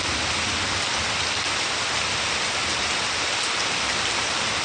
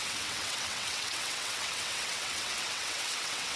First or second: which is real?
first